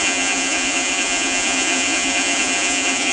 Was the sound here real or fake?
fake